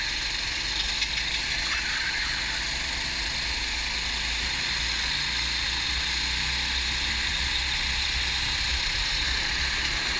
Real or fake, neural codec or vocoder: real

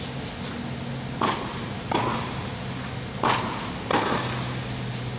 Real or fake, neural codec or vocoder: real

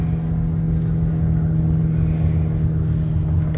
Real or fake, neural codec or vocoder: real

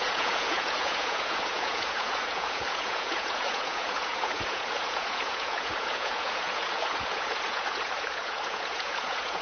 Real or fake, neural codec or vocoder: fake, vocoder, Vocos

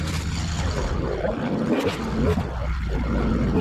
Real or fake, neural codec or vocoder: real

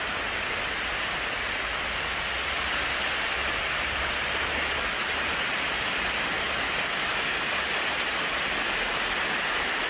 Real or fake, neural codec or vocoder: real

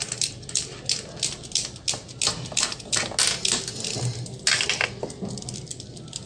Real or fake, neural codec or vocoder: real